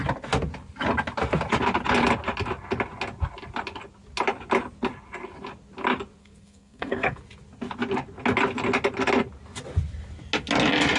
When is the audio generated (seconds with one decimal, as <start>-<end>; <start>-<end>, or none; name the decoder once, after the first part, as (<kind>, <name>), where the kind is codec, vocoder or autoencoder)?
6.2-7.2 (codec, SNAC)